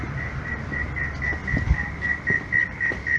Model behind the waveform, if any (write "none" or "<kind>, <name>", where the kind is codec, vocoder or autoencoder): none